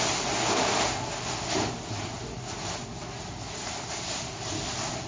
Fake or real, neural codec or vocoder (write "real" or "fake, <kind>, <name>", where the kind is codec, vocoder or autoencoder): real